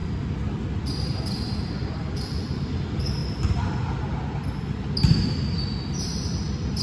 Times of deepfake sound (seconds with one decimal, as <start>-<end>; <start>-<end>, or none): 0.6-3.2; 5.9-6.8